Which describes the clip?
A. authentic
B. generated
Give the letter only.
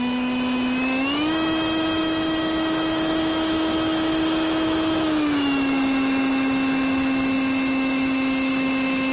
B